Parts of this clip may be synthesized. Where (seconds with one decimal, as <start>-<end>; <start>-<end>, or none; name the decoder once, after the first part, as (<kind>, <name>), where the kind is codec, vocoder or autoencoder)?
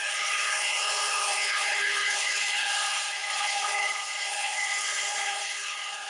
0.0-6.1 (codec, HILCodec)